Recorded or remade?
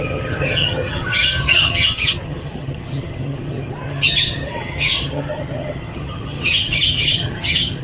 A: remade